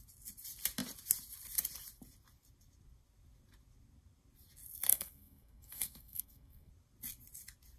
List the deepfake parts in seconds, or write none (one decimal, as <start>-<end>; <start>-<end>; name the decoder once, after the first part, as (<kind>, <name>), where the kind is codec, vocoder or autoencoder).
4.9-6.7 (codec, SNAC)